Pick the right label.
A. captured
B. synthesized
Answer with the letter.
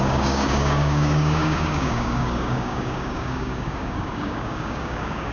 B